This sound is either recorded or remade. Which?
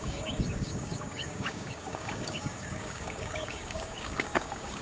remade